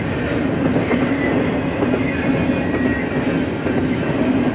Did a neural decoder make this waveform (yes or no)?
no